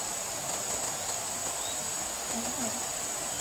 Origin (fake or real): real